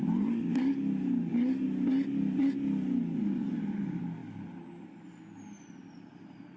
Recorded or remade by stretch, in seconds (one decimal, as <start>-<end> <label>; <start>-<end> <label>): 0.0-6.6 recorded